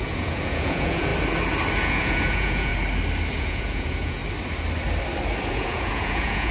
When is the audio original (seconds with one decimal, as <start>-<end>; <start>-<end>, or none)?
1.1-1.7; 2.7-3.3; 4.2-5.5